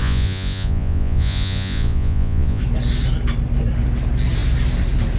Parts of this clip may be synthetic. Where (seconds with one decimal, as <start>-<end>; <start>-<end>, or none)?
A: 0.0-2.6